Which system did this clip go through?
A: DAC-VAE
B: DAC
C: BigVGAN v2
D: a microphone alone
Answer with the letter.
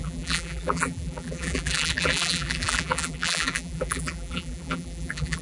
C